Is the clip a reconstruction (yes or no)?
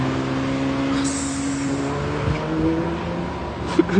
no